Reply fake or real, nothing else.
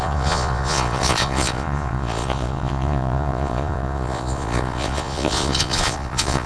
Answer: fake